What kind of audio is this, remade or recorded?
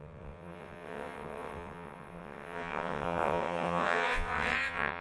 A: remade